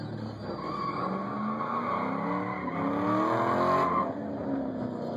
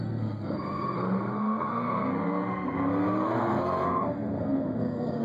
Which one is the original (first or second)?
first